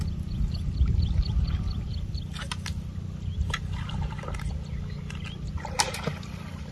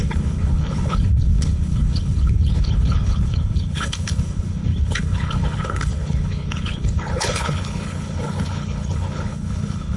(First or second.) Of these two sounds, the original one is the first